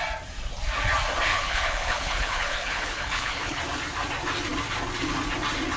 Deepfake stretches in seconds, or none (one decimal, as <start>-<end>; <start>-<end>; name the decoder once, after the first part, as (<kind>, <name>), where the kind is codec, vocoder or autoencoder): 1.3-3.6 (codec, HILCodec)